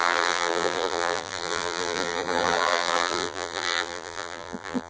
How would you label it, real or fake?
fake